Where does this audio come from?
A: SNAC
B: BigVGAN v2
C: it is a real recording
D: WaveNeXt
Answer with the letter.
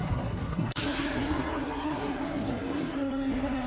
A